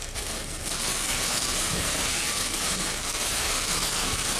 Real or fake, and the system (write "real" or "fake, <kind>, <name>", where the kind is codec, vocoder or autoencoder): fake, codec, SNAC